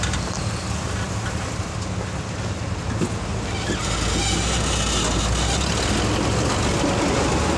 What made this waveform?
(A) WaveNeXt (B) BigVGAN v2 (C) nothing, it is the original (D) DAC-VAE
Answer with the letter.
C